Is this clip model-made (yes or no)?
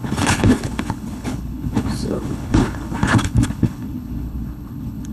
yes